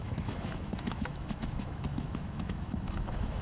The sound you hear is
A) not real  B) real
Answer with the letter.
A